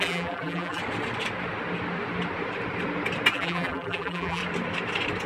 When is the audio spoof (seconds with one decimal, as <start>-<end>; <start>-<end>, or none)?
0.0-0.8; 3.3-4.4